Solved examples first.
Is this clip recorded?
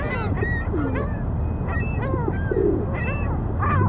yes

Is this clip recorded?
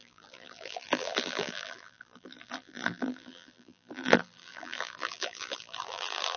no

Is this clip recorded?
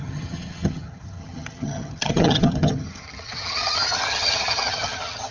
no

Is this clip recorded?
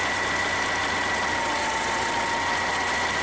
yes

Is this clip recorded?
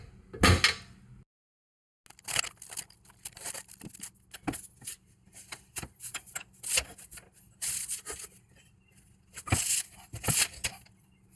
yes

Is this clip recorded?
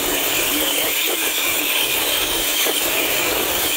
no